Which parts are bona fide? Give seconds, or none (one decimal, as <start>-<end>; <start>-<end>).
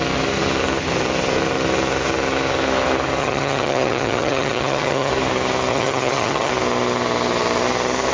0.0-3.2; 5.1-5.7; 6.5-8.1